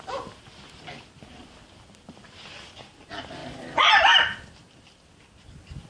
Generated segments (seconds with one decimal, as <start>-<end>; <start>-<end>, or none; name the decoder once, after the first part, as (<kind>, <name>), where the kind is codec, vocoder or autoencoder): none